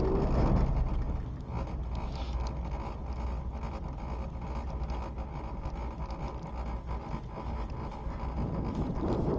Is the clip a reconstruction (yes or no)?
no